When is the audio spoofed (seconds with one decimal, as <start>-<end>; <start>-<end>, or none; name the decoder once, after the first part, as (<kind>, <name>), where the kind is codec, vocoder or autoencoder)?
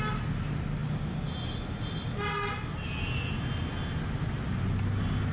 none